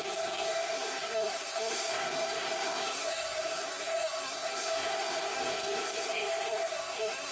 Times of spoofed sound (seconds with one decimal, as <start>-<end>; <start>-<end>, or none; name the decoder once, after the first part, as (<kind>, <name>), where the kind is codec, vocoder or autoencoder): 0.0-7.3 (codec, SNAC)